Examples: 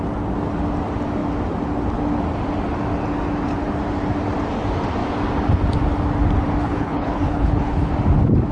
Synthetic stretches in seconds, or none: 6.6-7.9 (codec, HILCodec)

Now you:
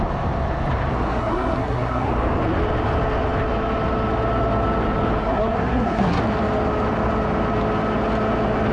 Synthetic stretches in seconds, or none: 1.1-2.1 (codec, SNAC); 5.2-6.2

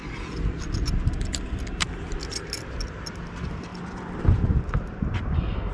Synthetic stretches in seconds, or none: none

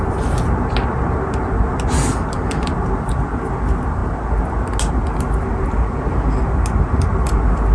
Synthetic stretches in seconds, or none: none